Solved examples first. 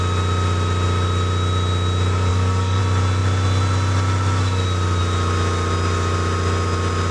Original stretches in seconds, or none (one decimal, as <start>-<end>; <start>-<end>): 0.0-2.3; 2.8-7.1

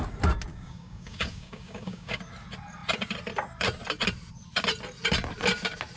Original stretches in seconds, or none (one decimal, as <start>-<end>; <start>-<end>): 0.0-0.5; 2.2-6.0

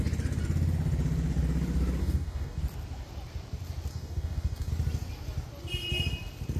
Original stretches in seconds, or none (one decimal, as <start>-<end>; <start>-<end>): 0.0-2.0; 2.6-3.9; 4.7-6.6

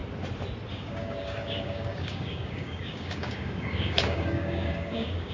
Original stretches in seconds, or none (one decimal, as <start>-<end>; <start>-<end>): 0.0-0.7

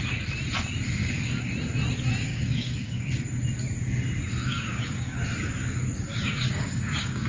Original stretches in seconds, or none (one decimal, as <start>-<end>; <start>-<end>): 0.0-1.0; 1.5-2.3; 3.1-4.4; 5.2-6.1

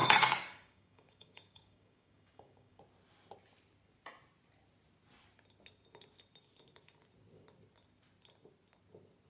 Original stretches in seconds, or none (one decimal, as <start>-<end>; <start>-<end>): 2.8-9.3